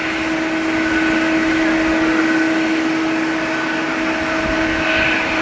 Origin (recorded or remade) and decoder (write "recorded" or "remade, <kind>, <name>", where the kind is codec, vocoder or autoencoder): recorded